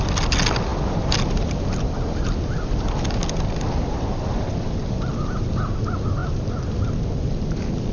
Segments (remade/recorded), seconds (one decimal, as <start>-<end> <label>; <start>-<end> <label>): 0.0-7.9 recorded